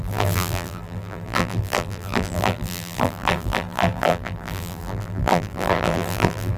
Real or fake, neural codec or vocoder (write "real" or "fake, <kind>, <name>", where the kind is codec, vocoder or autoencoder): fake, vocoder, BigVGAN v2